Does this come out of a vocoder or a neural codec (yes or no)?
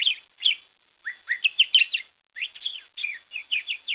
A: no